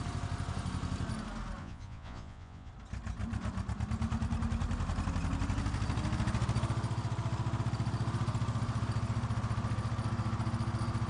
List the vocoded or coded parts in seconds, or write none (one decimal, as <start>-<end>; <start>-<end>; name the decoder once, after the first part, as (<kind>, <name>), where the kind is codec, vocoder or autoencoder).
1.6-2.7 (vocoder, Vocos)